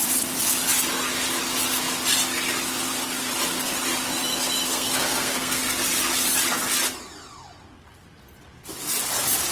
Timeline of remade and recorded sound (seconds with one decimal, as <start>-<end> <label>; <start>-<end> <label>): 0.0-4.7 recorded; 4.7-5.6 remade; 5.6-9.5 recorded